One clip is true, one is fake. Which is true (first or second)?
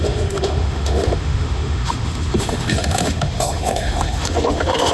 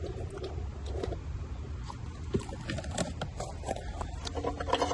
second